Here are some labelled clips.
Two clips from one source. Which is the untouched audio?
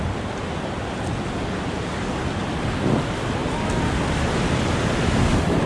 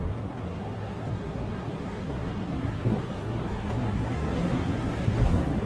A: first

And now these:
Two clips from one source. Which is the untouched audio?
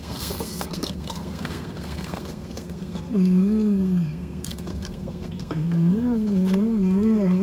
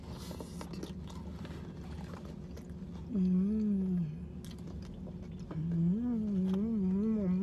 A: second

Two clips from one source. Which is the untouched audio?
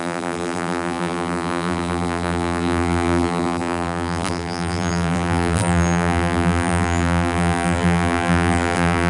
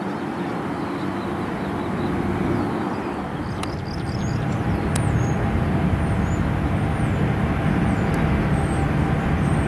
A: second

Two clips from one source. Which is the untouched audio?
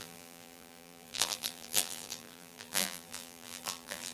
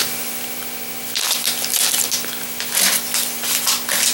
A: second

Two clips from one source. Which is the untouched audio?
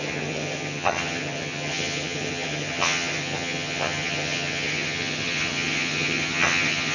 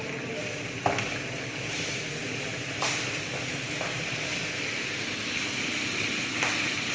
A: second